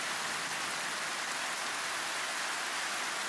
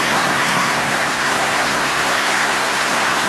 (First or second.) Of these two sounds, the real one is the first